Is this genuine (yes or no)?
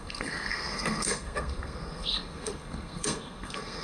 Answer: no